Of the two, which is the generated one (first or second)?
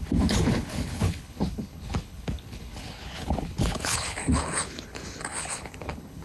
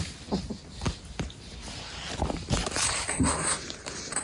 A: first